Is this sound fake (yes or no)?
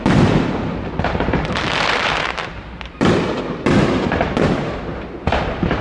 yes